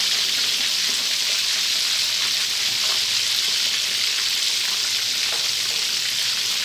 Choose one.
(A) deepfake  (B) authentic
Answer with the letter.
B